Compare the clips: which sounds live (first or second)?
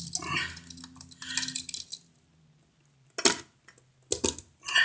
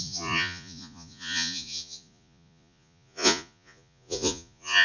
first